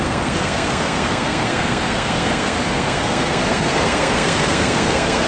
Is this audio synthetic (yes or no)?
yes